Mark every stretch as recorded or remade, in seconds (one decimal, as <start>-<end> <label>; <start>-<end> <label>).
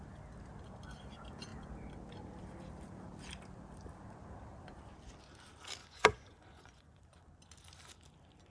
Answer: 0.0-5.8 recorded; 5.8-7.0 remade; 7.0-8.5 recorded